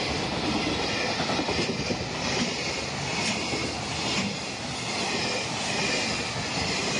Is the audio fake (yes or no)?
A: no